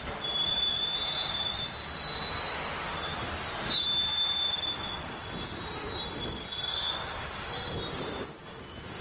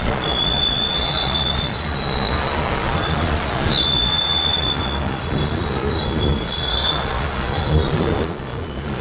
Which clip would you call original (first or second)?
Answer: first